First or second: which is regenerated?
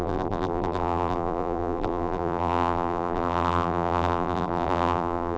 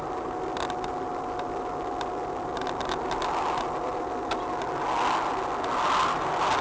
first